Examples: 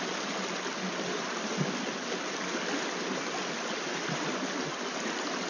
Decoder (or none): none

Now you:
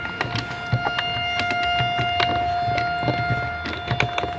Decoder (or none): none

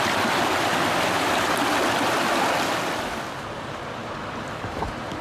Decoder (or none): none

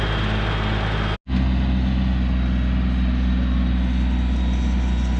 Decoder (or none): none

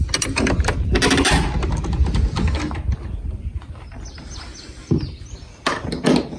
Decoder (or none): none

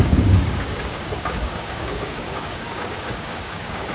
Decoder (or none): codec, DAC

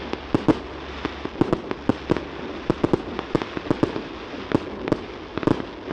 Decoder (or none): none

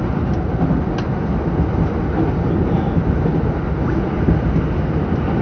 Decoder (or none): none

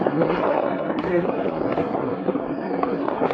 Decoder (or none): codec, SNAC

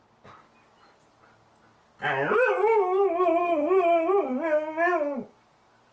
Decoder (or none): none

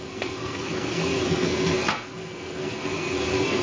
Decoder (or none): codec, SNAC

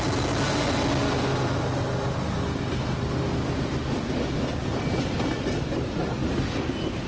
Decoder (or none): none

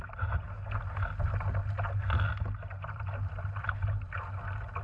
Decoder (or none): none